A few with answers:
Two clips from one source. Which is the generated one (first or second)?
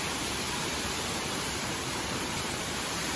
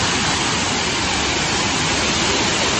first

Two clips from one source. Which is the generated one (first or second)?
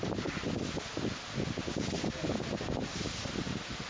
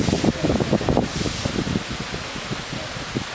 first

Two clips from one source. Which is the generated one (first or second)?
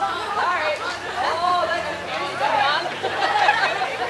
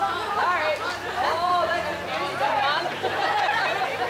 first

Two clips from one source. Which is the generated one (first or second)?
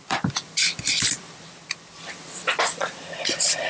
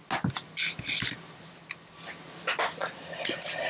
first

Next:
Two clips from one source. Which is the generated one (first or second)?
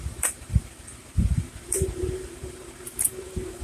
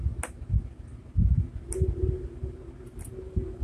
first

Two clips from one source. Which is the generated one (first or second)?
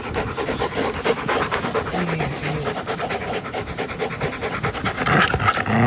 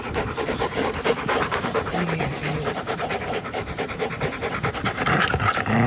second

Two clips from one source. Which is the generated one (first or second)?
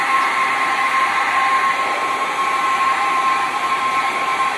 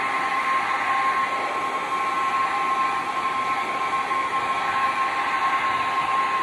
first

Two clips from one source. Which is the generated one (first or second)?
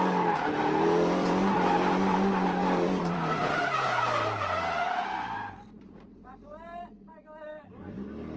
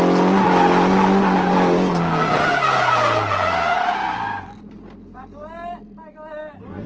first